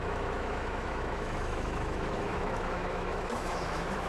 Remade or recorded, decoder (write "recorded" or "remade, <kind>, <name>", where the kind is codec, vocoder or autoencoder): remade, autoencoder, DAC-VAE